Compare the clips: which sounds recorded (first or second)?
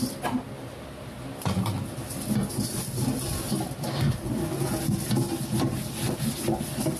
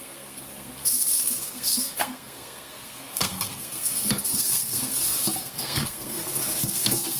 first